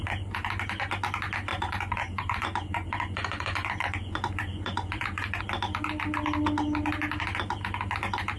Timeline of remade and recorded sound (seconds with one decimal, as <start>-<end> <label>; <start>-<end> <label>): 0.0-1.5 recorded; 1.5-5.4 remade; 5.4-8.4 recorded